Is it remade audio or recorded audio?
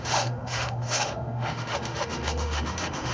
remade